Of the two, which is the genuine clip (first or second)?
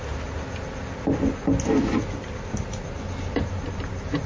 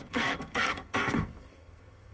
first